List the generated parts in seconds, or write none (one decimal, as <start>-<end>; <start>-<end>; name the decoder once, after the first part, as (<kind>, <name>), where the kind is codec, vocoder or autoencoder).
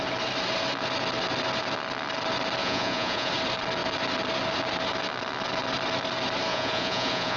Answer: 2.6-3.3 (vocoder, Vocos); 6.5-7.4